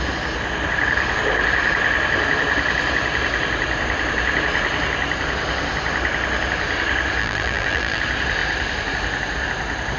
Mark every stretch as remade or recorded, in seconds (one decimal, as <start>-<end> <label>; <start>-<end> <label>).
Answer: 0.0-7.2 recorded; 7.2-8.0 remade; 8.0-10.0 recorded